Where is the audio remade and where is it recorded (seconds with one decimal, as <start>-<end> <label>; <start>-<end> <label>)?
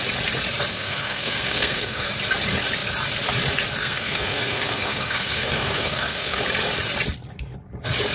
0.0-0.7 recorded; 0.7-2.1 remade; 2.1-3.8 recorded; 3.8-6.4 remade; 6.4-8.1 recorded